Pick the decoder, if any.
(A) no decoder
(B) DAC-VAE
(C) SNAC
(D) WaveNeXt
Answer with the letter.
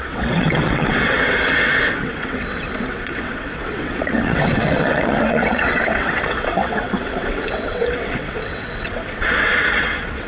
D